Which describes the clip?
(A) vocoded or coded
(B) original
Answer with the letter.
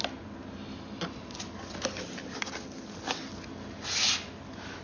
B